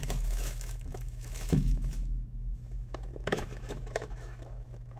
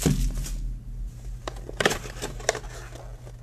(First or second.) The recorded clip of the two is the second